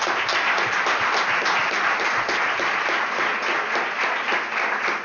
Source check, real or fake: real